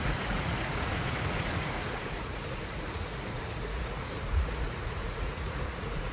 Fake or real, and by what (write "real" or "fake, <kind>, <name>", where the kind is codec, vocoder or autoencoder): fake, vocoder, Vocos